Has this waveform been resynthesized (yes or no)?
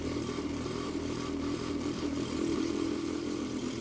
yes